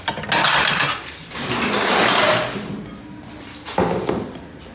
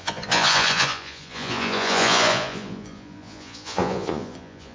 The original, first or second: first